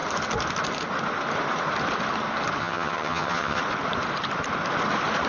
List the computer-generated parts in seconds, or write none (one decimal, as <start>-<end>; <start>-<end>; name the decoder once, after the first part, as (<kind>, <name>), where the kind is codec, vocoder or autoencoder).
2.6-3.6 (vocoder, HiFi-GAN)